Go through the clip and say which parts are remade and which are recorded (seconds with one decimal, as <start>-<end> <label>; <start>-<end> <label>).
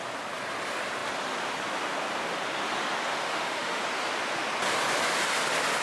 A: 0.0-3.1 recorded; 3.1-3.8 remade; 3.8-5.8 recorded